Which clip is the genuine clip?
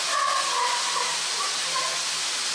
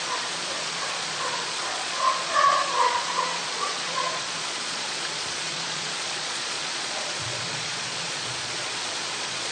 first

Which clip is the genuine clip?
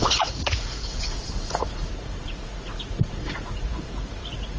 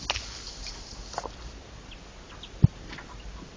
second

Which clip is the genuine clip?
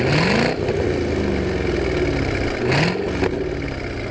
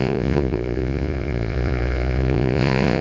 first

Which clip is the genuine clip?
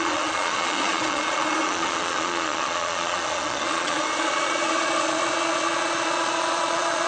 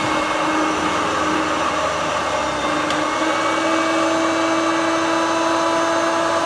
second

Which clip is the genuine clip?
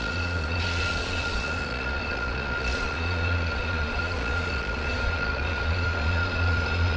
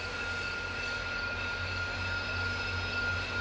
second